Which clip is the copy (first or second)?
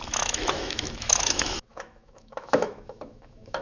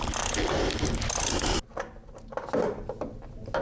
first